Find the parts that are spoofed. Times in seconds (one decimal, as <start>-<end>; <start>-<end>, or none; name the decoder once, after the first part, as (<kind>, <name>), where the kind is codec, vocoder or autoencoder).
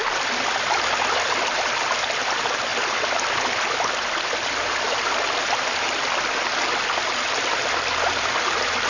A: none